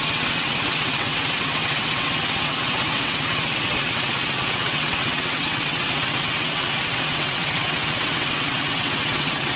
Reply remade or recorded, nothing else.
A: remade